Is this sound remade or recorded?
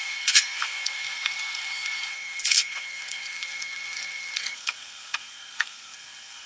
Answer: remade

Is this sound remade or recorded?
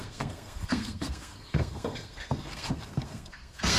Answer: remade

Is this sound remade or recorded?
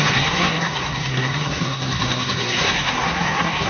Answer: remade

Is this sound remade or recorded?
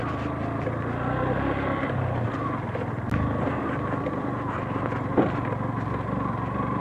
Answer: recorded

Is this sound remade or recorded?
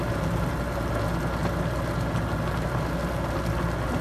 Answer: recorded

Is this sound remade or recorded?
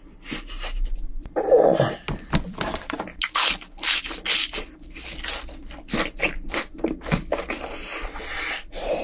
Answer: recorded